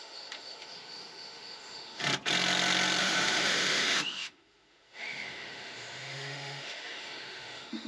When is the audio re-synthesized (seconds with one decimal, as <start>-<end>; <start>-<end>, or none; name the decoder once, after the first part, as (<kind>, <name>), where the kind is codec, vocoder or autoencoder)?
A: 0.0-2.0 (autoencoder, DAC-VAE); 3.0-7.9